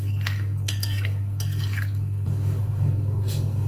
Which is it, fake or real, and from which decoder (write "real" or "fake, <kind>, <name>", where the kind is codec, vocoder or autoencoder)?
fake, codec, SNAC